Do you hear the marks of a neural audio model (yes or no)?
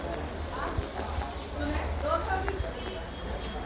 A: no